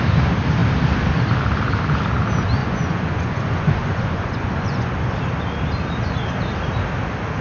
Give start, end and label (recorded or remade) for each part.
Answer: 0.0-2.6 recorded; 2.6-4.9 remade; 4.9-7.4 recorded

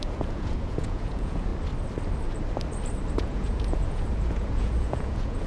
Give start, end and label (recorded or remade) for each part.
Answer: 0.0-1.5 remade; 1.5-3.2 recorded; 3.2-5.5 remade

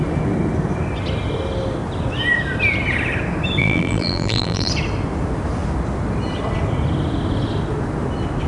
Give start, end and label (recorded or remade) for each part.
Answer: 0.0-3.6 recorded; 3.6-4.7 remade; 4.7-8.5 recorded